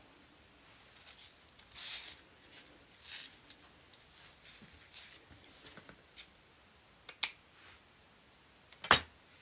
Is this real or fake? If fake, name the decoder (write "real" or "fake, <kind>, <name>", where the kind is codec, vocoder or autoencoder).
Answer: real